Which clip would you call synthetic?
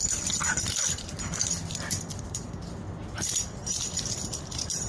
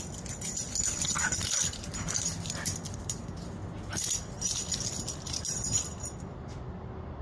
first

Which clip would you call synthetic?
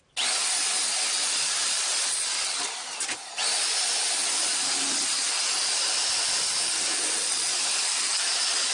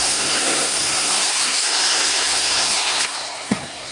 second